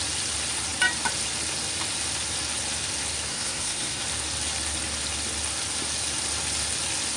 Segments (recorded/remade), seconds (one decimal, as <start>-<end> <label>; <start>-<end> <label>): 0.0-3.3 recorded; 3.3-4.0 remade; 4.0-7.2 recorded